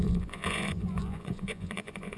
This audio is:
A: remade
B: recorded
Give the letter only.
A